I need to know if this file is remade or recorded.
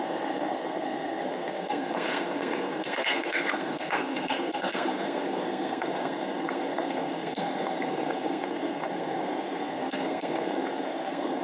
remade